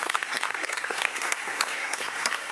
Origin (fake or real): fake